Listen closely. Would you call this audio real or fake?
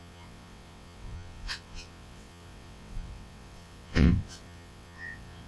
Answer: fake